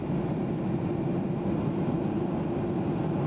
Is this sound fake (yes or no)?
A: no